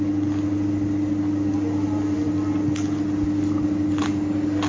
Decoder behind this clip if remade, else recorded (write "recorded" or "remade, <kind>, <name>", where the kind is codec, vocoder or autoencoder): recorded